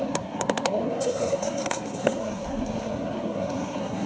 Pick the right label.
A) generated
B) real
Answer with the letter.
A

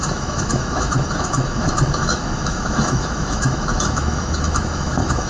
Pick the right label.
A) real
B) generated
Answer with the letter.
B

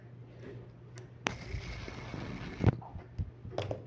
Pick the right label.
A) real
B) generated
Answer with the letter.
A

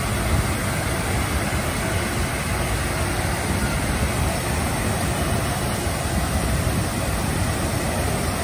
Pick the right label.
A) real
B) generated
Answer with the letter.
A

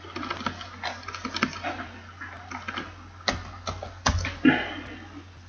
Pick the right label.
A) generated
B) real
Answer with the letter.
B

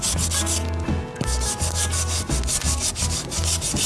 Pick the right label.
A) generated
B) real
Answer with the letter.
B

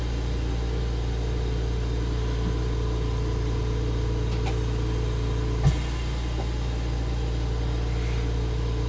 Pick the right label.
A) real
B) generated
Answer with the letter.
A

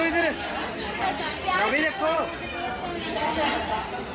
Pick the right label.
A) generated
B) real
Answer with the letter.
B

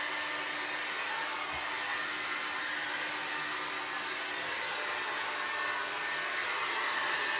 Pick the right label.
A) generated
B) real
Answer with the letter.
B